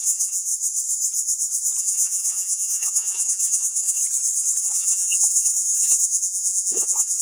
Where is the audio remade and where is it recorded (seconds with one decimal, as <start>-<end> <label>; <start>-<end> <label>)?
0.0-0.5 remade; 0.5-1.8 recorded; 1.8-4.0 remade; 4.0-4.6 recorded; 4.6-7.2 remade